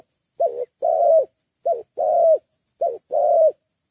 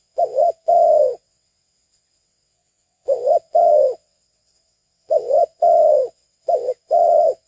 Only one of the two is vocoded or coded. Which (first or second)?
second